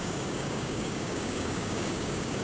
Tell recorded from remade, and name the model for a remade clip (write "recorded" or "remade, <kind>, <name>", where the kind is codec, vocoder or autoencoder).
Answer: remade, codec, DAC